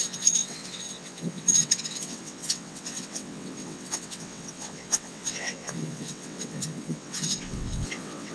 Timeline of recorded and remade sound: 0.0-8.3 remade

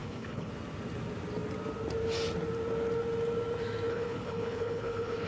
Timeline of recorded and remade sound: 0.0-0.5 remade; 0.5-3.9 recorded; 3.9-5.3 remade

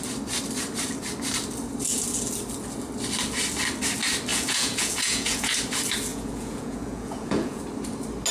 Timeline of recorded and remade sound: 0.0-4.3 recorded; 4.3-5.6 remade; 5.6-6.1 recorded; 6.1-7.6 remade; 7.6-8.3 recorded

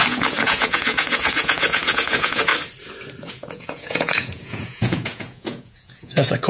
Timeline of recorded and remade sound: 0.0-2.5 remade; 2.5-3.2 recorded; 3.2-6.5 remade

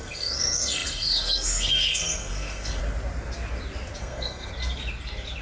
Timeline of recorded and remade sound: 0.0-2.8 remade; 2.8-4.0 recorded; 4.0-4.5 remade; 4.5-5.4 recorded

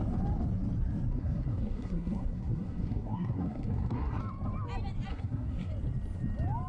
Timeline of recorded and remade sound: 0.0-1.1 recorded; 1.1-4.2 remade; 4.2-5.1 recorded; 5.1-5.7 remade; 5.7-6.7 recorded

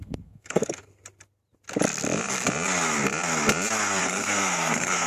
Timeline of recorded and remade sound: 0.0-0.9 remade; 0.9-4.0 recorded; 4.0-5.1 remade